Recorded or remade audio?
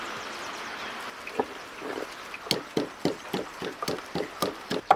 recorded